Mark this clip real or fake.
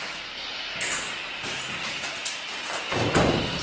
real